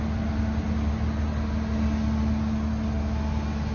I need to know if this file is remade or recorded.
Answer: recorded